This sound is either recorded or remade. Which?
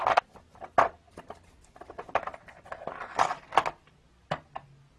recorded